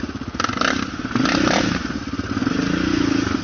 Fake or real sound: real